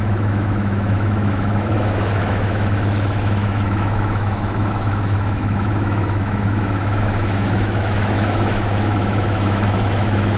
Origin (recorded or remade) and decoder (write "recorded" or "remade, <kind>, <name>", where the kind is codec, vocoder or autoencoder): remade, autoencoder, DAC-VAE